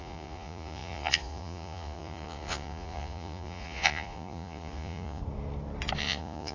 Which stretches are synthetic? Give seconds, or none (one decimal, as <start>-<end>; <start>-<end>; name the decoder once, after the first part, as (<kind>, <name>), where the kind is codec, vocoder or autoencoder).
0.0-5.2 (vocoder, Vocos); 6.0-6.5